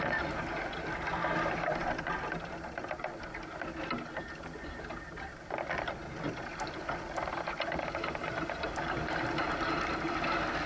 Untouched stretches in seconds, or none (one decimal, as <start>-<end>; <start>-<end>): 0.0-10.7